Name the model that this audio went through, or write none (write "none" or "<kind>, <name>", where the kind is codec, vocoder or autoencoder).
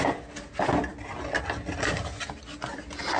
none